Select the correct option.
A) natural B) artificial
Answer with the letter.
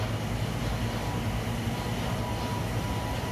A